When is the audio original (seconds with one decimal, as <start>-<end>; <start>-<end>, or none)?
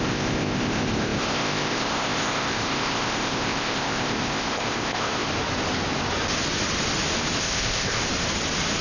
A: 5.3-7.4; 8.0-8.8